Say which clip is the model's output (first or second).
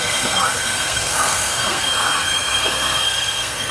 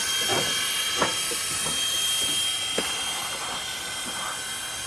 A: first